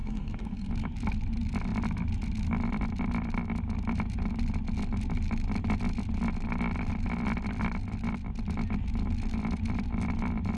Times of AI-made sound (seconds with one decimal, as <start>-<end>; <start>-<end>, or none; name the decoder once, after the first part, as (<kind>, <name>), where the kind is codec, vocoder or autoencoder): 0.0-0.7 (codec, SNAC)